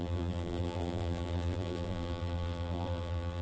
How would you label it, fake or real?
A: fake